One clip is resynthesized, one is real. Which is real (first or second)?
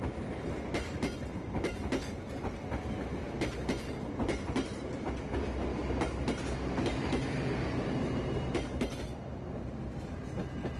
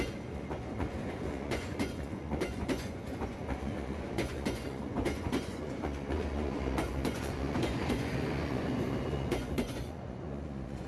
first